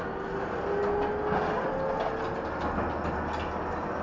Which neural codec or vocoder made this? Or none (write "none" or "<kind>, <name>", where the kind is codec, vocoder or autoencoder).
none